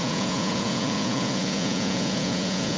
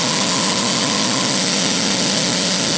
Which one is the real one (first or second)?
second